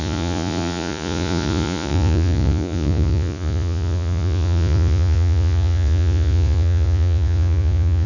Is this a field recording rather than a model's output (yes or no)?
no